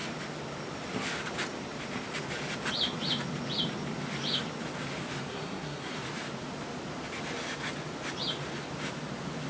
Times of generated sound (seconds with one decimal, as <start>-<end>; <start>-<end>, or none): 5.3-6.0